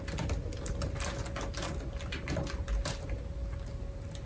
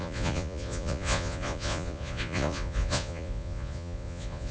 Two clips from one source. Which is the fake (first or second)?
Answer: second